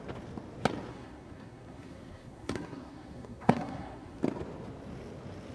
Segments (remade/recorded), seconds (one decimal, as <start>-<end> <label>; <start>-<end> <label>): 0.0-0.9 recorded; 0.9-4.2 remade; 4.2-5.5 recorded